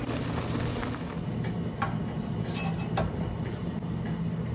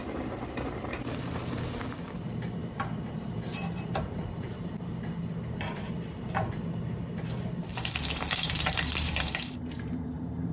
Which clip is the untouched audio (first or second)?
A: first